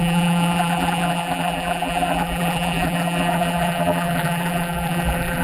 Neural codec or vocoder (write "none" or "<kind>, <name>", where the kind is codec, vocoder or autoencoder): vocoder, BigVGAN v2